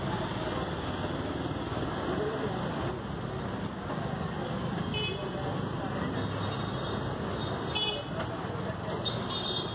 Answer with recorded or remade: recorded